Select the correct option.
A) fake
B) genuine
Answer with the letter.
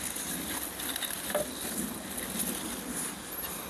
B